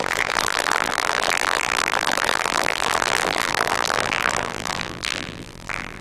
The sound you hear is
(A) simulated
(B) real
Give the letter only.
A